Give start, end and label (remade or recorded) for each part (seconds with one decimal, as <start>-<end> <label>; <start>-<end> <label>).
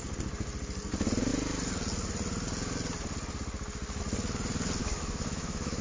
0.0-4.8 recorded; 4.8-5.8 remade